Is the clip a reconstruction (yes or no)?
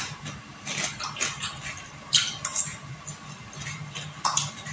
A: no